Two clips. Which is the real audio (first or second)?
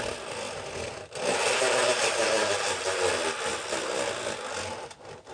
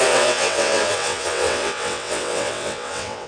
first